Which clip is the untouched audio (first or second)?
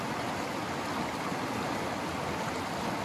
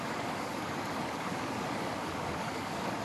first